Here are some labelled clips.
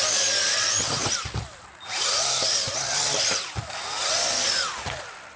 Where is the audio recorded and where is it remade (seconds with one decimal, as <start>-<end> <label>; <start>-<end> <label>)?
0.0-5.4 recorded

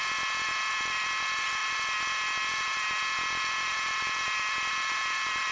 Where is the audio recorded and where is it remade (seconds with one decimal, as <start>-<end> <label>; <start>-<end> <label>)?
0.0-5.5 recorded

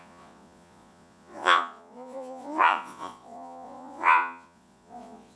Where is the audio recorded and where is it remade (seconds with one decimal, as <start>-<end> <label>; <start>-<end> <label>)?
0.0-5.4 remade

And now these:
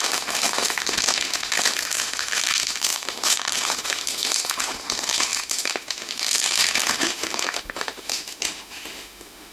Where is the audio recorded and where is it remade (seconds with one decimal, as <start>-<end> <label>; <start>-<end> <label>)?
0.0-9.5 remade

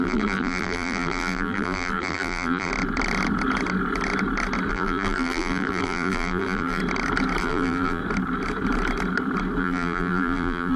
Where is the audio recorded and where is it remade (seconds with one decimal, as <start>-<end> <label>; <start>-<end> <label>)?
0.0-2.7 remade; 2.7-4.7 recorded; 4.7-6.8 remade; 6.8-7.4 recorded; 7.4-8.0 remade; 8.0-9.6 recorded; 9.6-10.8 remade

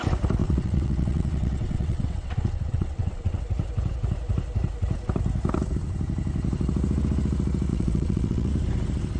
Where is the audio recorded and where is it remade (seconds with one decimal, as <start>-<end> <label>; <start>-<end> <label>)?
0.0-0.4 recorded; 0.4-3.4 remade; 3.4-7.7 recorded; 7.7-8.5 remade; 8.5-9.2 recorded

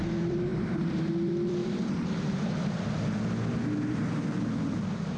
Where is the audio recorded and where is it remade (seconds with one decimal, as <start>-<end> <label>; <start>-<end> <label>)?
0.0-0.5 recorded; 0.5-1.1 remade; 1.1-1.6 recorded; 1.6-3.0 remade; 3.0-5.2 recorded